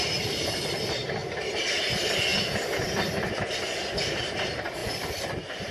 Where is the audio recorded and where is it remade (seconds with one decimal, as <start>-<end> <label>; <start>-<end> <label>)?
0.0-5.7 recorded